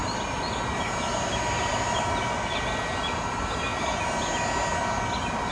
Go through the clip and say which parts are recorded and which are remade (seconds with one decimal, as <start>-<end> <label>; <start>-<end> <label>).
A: 0.0-5.5 recorded